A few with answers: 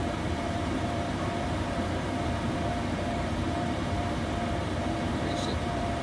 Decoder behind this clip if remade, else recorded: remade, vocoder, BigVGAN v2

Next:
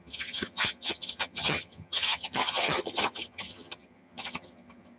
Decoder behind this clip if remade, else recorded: remade, vocoder, HiFi-GAN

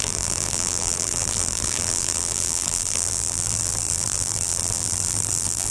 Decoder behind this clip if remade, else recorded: remade, vocoder, BigVGAN v2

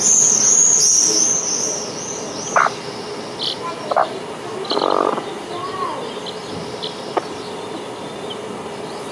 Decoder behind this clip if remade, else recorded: recorded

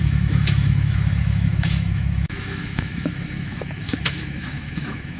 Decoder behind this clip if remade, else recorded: remade, autoencoder, DAC-VAE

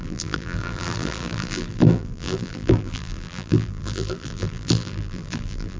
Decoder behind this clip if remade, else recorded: remade, vocoder, BigVGAN v2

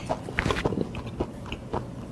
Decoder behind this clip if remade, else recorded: recorded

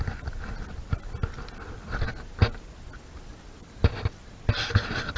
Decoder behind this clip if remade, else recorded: recorded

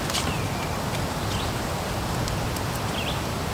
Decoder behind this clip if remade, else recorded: recorded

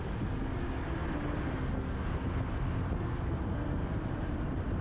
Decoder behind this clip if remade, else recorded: recorded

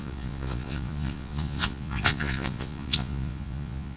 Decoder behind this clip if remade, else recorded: remade, vocoder, Vocos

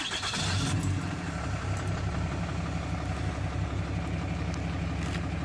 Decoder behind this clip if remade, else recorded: recorded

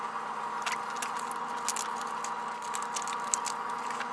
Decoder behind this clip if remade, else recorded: recorded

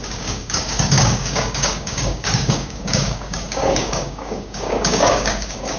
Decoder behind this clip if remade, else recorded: remade, codec, DAC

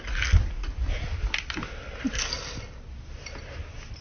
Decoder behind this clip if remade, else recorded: recorded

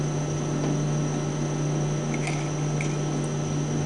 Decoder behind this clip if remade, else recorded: recorded